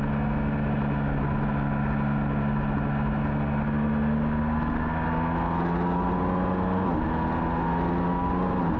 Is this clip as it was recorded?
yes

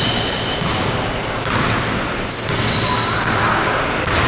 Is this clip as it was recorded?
yes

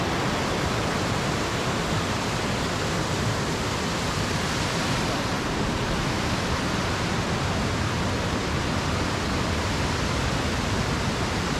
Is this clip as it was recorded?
yes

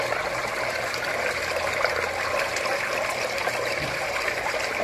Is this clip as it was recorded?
yes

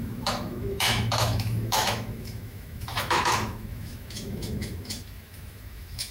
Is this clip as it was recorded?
no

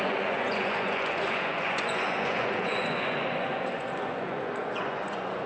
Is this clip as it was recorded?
no